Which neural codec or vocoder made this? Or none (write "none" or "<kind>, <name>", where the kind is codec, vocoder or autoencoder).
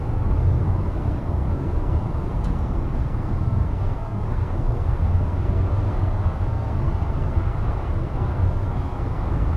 codec, SNAC